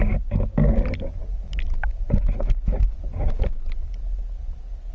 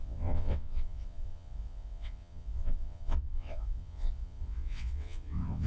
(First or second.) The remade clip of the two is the second